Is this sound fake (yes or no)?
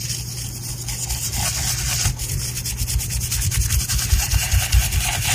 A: no